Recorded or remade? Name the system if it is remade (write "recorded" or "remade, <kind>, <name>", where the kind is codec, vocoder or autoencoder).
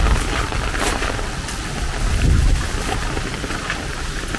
recorded